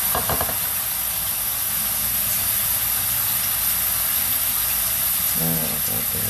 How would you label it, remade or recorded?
recorded